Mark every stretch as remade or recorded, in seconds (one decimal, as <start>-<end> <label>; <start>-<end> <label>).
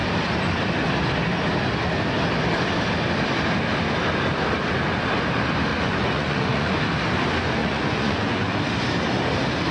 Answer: 0.0-5.7 recorded; 5.7-6.8 remade; 6.8-7.6 recorded; 7.6-8.6 remade; 8.6-9.7 recorded